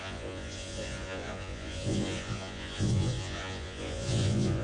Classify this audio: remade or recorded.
remade